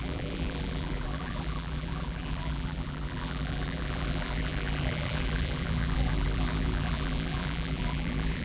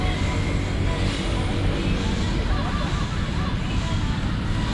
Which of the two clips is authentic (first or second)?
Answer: second